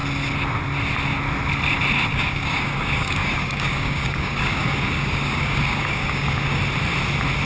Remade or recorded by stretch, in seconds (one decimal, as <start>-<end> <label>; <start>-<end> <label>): 0.0-2.1 recorded; 2.1-6.6 remade; 6.6-7.5 recorded